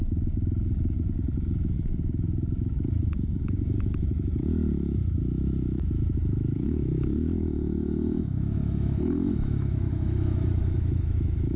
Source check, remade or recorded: remade